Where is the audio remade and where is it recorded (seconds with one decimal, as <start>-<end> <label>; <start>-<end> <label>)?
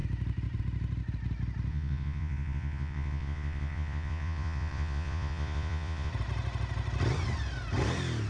0.0-1.7 recorded; 1.7-6.1 remade; 6.1-8.3 recorded